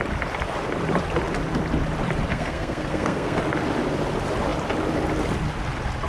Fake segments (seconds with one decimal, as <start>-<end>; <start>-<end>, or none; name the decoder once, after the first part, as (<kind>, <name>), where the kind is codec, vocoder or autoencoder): 2.3-3.4 (codec, SNAC)